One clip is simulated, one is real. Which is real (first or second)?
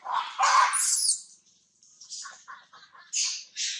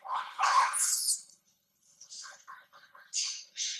first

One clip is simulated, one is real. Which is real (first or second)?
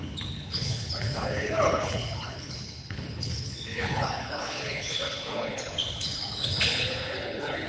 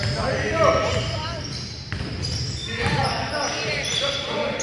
second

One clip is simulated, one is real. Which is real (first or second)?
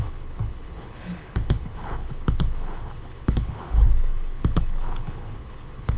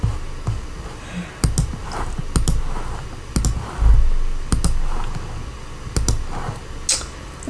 second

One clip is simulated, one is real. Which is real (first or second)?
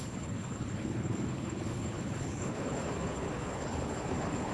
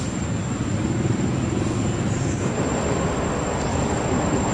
second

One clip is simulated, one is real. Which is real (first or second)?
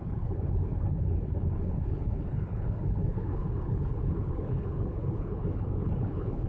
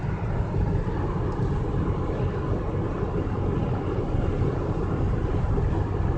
second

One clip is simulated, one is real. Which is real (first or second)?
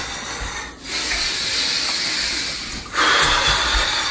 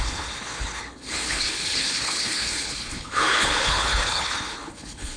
first